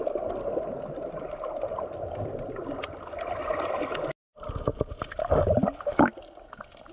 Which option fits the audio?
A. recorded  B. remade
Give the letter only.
A